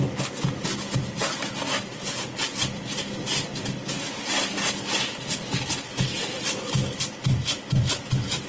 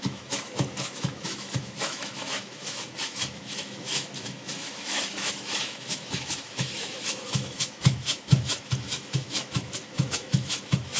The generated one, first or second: second